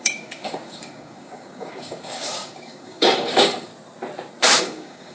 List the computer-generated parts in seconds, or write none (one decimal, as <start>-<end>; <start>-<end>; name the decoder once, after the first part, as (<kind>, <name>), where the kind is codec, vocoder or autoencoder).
0.0-3.7 (codec, DAC); 4.6-5.1